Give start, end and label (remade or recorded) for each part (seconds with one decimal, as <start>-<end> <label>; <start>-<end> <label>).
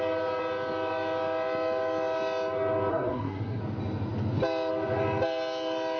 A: 0.0-2.9 recorded; 2.9-3.6 remade; 3.6-6.0 recorded